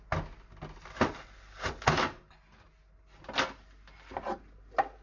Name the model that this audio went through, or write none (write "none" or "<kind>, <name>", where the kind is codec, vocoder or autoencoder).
none